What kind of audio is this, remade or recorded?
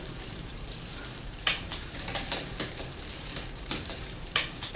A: remade